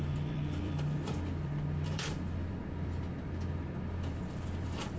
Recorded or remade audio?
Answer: remade